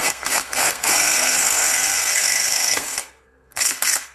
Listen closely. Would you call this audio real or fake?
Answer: fake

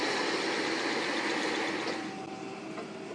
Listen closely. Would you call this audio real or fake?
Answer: real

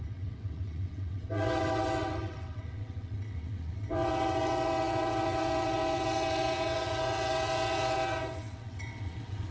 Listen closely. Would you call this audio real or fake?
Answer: fake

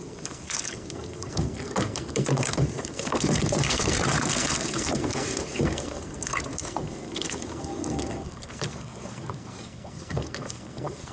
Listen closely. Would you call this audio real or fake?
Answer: fake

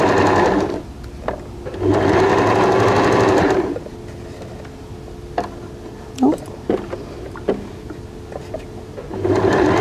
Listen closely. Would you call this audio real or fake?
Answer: real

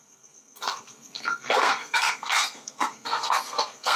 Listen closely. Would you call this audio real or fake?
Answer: fake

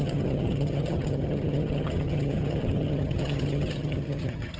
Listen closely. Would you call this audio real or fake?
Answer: fake